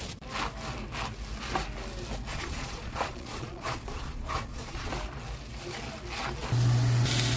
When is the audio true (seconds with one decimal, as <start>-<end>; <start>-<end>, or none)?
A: 0.0-2.3; 4.9-7.4